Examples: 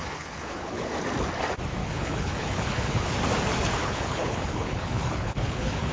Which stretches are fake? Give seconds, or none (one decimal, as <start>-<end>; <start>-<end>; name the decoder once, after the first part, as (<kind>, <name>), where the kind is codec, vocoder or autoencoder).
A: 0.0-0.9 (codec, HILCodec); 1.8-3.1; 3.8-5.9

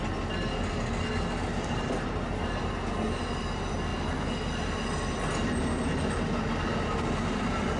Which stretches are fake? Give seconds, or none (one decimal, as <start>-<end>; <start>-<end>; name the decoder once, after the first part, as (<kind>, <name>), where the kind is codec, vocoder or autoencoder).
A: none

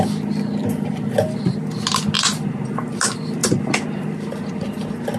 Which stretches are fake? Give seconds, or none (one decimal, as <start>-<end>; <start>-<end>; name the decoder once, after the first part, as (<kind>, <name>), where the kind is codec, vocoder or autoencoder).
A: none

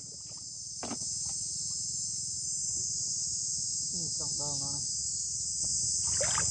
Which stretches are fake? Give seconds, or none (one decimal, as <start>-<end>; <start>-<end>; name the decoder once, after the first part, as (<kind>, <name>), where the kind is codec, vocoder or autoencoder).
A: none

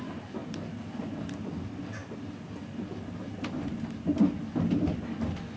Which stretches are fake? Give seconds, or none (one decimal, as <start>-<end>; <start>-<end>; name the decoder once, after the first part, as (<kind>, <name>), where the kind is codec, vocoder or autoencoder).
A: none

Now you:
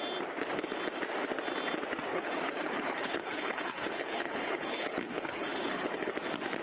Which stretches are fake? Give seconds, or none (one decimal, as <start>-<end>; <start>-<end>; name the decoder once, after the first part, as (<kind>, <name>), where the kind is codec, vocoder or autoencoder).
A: 2.1-6.1 (codec, HILCodec)